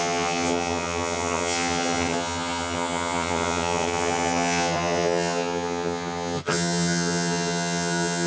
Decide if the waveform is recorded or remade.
remade